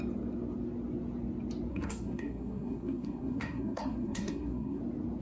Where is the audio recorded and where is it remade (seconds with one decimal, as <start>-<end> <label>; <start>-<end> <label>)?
0.0-1.7 recorded; 1.7-4.8 remade; 4.8-5.2 recorded